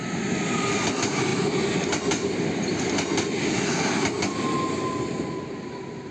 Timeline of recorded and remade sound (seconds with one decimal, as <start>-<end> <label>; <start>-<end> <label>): 0.0-6.1 recorded